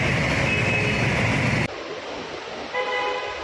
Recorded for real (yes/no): yes